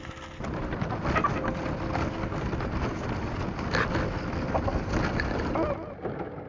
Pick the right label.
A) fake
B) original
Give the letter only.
B